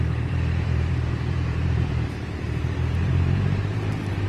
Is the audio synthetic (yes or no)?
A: yes